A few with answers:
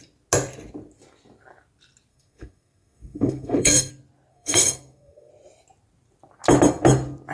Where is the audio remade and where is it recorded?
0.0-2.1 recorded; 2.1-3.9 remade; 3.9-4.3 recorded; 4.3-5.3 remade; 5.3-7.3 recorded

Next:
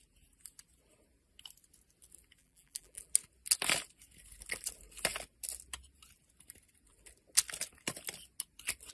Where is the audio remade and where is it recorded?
0.0-2.4 recorded; 2.4-3.1 remade; 3.1-8.9 recorded

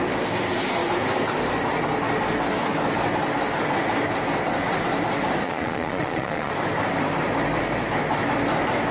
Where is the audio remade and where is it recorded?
0.0-5.4 recorded; 5.4-6.5 remade; 6.5-8.9 recorded

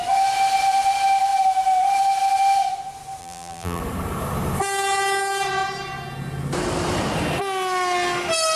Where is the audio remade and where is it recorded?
0.0-3.2 recorded; 3.2-3.8 remade; 3.8-8.6 recorded

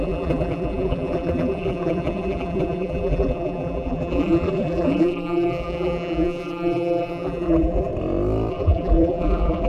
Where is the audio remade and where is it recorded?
0.0-7.9 remade; 7.9-8.5 recorded; 8.5-9.7 remade

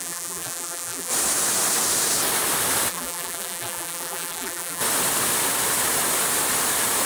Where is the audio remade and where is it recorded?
0.0-1.1 remade; 1.1-2.9 recorded; 2.9-4.8 remade; 4.8-7.1 recorded

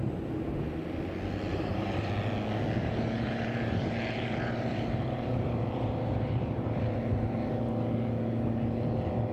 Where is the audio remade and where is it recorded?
0.0-1.5 recorded; 1.5-2.1 remade; 2.1-2.8 recorded; 2.8-7.7 remade; 7.7-9.3 recorded